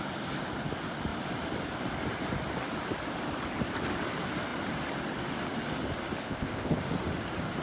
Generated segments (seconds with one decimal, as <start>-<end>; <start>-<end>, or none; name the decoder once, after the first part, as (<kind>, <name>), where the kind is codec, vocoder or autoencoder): 6.2-6.8 (codec, ZipCodec)